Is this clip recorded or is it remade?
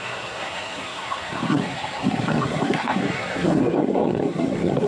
remade